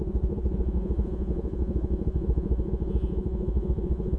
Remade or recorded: remade